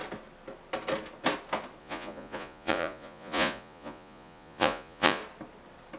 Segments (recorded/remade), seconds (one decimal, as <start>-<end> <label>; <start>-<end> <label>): 0.0-1.8 recorded; 1.8-5.2 remade; 5.2-6.0 recorded